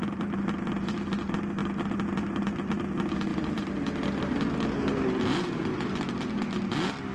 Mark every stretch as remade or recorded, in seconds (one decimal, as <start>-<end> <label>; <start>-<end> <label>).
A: 0.0-7.1 recorded